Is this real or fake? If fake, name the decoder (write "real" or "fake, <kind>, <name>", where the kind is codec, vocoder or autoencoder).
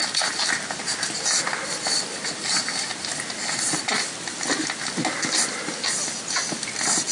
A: real